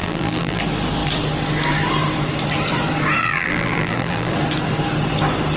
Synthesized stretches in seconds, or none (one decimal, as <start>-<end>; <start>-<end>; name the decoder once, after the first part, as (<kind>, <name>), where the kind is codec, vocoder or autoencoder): 0.0-0.6 (vocoder, BigVGAN v2); 3.2-4.3